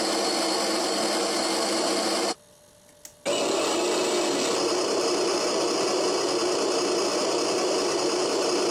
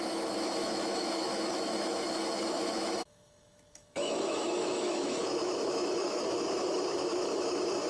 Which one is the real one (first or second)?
first